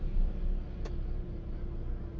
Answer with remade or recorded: recorded